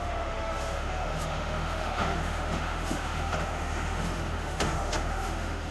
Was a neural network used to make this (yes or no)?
yes